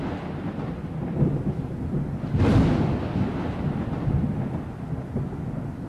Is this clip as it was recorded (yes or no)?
yes